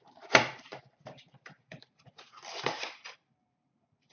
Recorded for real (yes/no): no